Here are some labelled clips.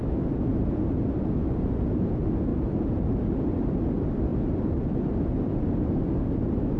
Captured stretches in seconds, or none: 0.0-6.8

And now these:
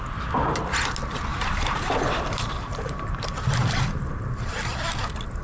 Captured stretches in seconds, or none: 0.0-1.3; 4.5-5.4

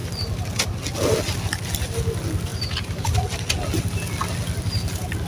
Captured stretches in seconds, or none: 0.0-2.5; 3.2-5.3